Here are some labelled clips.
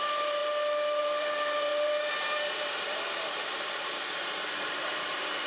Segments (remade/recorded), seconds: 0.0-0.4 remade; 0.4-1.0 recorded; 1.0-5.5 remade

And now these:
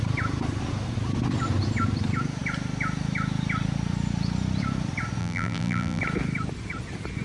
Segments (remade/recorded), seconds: 0.0-5.2 recorded; 5.2-6.0 remade; 6.0-7.2 recorded

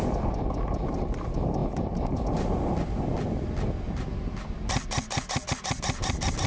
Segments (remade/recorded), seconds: 0.0-6.5 recorded

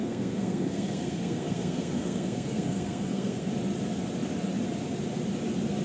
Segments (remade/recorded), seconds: 0.0-3.5 remade; 3.5-5.8 recorded

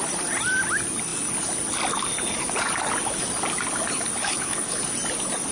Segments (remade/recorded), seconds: 0.0-4.2 recorded; 4.2-4.9 remade; 4.9-5.5 recorded

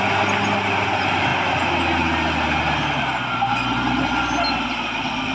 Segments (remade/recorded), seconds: 0.0-5.3 recorded

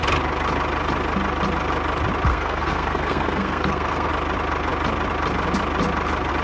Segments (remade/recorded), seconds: 0.0-2.3 recorded; 2.3-4.1 remade; 4.1-6.4 recorded

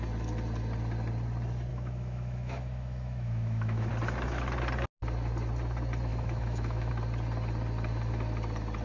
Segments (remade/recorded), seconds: 0.0-1.7 recorded; 1.7-3.9 remade; 3.9-6.1 recorded; 6.1-6.9 remade; 6.9-8.8 recorded